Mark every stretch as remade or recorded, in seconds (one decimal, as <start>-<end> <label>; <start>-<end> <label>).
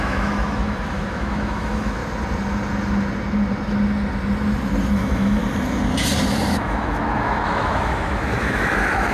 0.0-2.0 remade; 2.0-4.9 recorded; 4.9-5.4 remade; 5.4-6.5 recorded; 6.5-9.1 remade